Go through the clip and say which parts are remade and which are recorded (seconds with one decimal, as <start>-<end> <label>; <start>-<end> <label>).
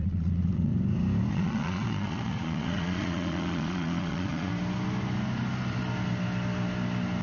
0.0-0.7 remade; 0.7-1.3 recorded; 1.3-4.5 remade; 4.5-7.2 recorded